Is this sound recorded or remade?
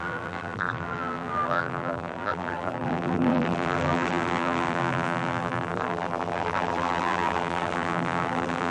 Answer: remade